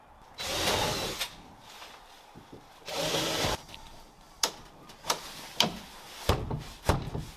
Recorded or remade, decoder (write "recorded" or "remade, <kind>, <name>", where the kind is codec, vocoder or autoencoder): remade, vocoder, BigVGAN v2